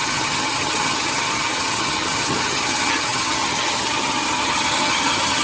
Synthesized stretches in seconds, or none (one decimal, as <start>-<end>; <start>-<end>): 0.0-5.4